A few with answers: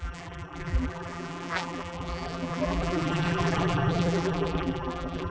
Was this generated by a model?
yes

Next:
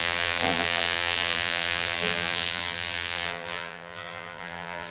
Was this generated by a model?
yes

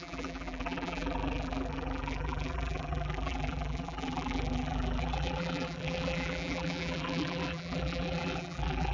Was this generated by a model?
yes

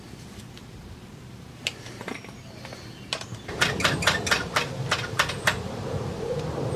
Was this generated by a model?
yes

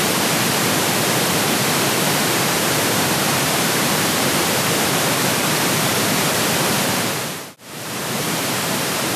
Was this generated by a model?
yes